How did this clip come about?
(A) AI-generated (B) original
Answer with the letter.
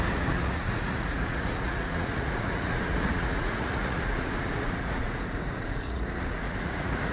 A